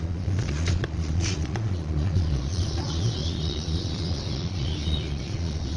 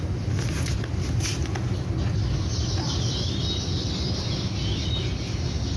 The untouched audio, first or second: second